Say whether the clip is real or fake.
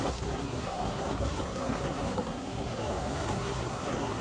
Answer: fake